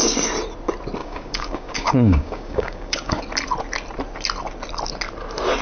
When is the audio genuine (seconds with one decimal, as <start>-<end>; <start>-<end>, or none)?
0.0-1.0; 3.2-5.6